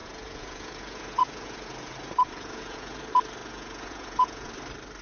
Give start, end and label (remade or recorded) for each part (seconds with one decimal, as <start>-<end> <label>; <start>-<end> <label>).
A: 0.0-3.0 remade; 3.0-3.4 recorded; 3.4-4.5 remade; 4.5-5.0 recorded